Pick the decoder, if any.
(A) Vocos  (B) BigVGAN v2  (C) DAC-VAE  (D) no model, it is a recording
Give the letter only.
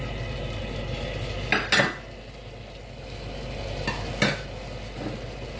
D